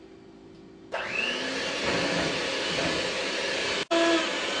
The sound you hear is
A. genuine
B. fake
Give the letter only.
A